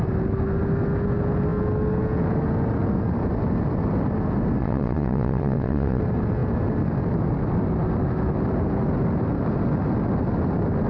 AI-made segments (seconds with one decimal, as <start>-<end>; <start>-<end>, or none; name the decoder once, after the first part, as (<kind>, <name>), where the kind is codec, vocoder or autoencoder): 4.6-6.0 (vocoder, Vocos)